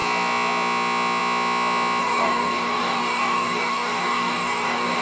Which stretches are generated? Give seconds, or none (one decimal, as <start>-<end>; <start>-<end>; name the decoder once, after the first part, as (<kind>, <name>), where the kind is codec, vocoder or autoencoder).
2.0-5.0 (codec, DAC)

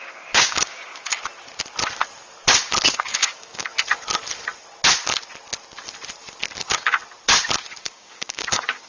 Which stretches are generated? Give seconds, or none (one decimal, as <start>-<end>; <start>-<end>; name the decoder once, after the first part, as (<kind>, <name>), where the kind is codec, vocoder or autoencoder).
0.0-1.1 (codec, DAC); 2.9-3.7; 6.6-7.0; 7.8-8.9